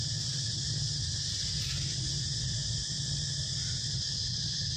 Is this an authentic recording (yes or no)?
yes